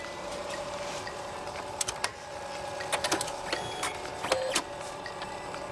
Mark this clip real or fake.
real